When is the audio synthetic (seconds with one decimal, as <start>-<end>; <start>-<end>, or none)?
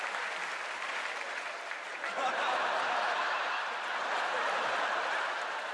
1.9-3.5